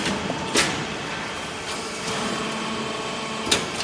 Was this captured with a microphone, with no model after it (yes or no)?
yes